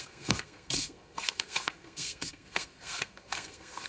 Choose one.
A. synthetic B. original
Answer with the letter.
A